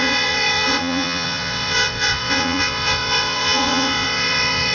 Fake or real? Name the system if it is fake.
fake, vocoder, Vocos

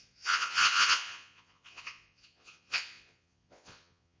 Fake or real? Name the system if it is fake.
fake, vocoder, Vocos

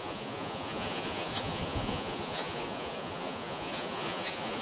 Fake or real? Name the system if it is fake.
fake, vocoder, Vocos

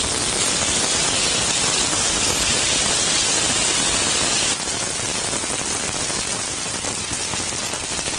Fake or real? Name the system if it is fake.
real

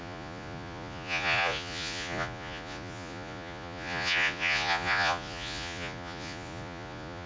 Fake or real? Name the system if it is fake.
fake, vocoder, Vocos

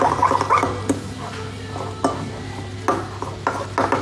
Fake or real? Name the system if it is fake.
real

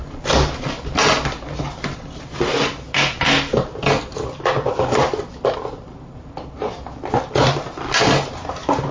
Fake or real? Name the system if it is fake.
real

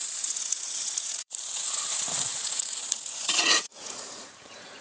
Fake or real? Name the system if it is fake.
fake, vocoder, Vocos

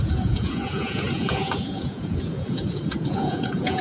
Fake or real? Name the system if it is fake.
fake, vocoder, Vocos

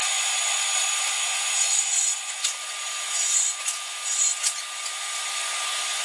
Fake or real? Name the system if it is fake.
fake, vocoder, Vocos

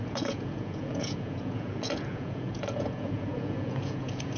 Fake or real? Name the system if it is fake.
fake, vocoder, Vocos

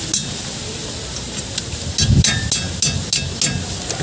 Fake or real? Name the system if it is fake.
real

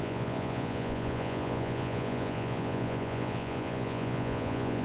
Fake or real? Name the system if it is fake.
fake, vocoder, Vocos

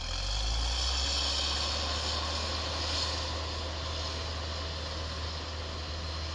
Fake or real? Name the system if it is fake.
real